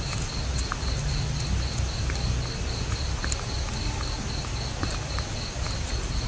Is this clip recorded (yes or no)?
yes